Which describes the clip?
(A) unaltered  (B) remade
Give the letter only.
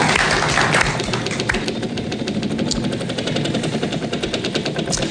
A